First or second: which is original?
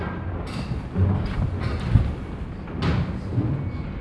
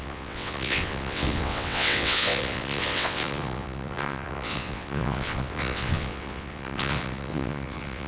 first